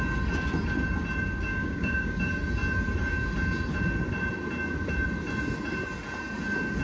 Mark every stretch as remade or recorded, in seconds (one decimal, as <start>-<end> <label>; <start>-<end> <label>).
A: 0.0-1.5 recorded; 1.5-2.2 remade; 2.2-6.8 recorded